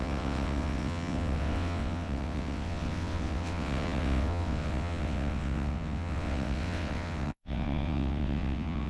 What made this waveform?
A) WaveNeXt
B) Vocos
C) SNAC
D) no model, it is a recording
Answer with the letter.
A